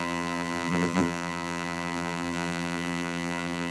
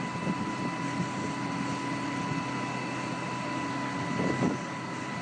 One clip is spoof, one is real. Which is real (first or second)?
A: second